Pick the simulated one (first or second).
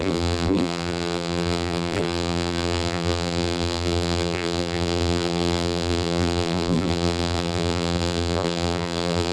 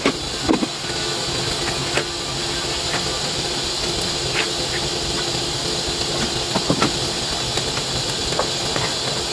first